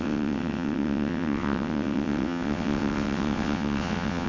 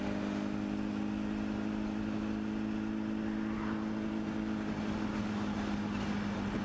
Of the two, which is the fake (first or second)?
first